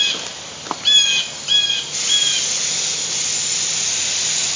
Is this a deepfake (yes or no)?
no